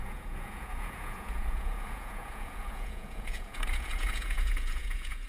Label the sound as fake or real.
fake